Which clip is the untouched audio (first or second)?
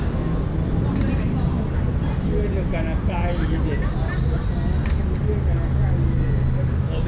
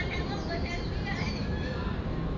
first